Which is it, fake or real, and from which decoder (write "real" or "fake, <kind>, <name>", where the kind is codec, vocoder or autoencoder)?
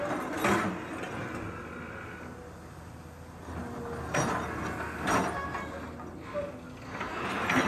real